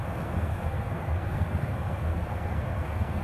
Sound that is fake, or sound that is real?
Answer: fake